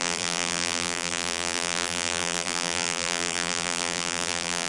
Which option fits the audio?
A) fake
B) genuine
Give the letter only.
A